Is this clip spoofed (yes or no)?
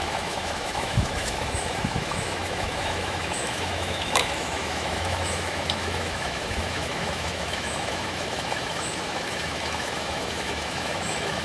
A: yes